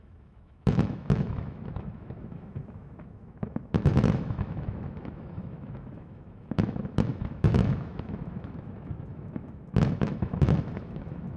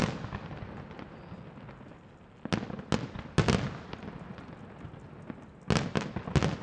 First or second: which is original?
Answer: second